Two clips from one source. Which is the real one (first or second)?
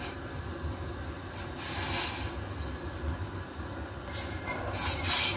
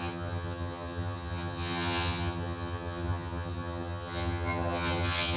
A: first